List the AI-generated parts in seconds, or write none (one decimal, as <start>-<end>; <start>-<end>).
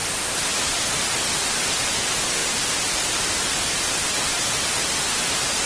none